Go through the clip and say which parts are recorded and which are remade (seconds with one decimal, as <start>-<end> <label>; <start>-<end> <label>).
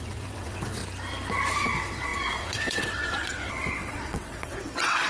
0.0-0.8 remade; 0.8-1.6 recorded; 1.6-5.1 remade